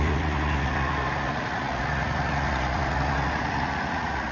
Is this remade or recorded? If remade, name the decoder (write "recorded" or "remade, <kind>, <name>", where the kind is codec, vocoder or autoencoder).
remade, vocoder, Vocos